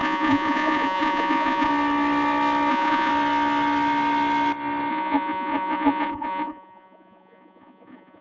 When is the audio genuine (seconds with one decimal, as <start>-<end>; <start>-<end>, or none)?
1.7-2.7; 3.1-4.9